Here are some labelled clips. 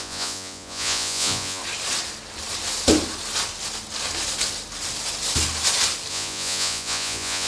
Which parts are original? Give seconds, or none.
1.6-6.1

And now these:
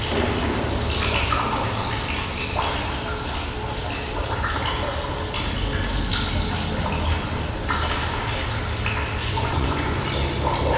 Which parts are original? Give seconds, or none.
0.0-9.2; 10.0-10.8

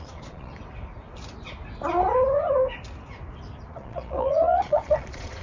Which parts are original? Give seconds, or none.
0.5-3.7